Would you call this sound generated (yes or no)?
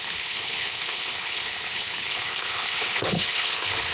yes